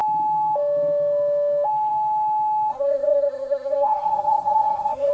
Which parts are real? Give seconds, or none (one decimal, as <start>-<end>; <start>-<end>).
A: 0.0-2.7